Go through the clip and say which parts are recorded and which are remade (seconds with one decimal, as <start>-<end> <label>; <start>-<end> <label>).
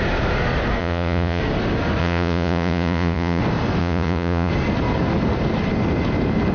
0.0-0.8 recorded; 0.8-1.4 remade; 1.4-2.0 recorded; 2.0-3.4 remade; 3.4-3.8 recorded; 3.8-4.5 remade; 4.5-6.5 recorded